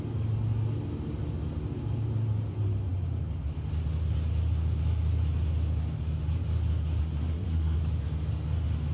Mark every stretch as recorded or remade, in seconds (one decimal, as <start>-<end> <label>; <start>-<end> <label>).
0.0-7.0 recorded; 7.0-7.8 remade; 7.8-8.9 recorded

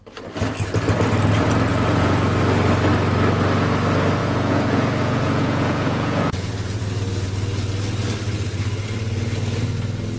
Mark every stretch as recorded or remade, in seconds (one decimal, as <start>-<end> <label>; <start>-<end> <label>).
0.0-1.7 recorded; 1.7-2.4 remade; 2.4-4.2 recorded; 4.2-6.8 remade; 6.8-10.2 recorded

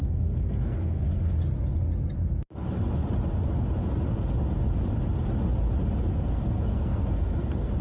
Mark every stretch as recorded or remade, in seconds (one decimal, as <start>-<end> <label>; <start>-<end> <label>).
0.0-1.4 remade; 1.4-6.1 recorded; 6.1-7.8 remade

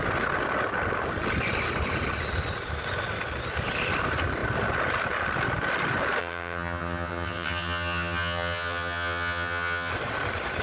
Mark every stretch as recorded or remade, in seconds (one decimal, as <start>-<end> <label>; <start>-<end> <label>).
0.0-6.2 recorded; 6.2-9.9 remade; 9.9-10.6 recorded

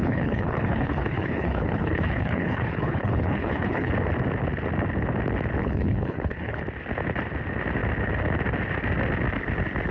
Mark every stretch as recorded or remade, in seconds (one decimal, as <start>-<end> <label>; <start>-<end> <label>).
0.0-3.9 remade; 3.9-5.6 recorded; 5.6-6.6 remade; 6.6-9.9 recorded

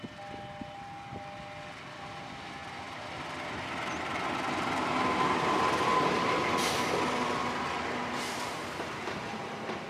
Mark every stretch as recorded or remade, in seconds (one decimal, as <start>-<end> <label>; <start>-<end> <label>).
0.0-9.9 recorded

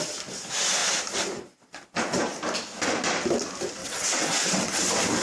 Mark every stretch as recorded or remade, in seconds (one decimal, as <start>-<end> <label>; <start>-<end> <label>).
0.0-3.8 recorded; 3.8-4.8 remade; 4.8-5.2 recorded

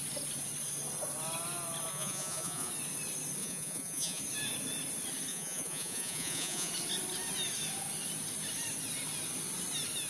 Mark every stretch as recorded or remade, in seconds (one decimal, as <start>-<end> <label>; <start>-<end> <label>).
0.0-1.9 recorded; 1.9-2.7 remade; 2.7-3.4 recorded; 3.4-4.2 remade; 4.2-5.3 recorded; 5.3-6.7 remade; 6.7-10.1 recorded